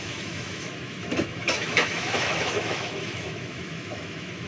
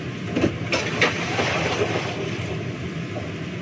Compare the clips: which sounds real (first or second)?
second